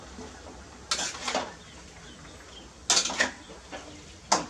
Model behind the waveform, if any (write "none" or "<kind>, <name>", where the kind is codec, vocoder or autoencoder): none